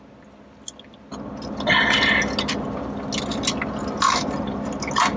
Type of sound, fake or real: real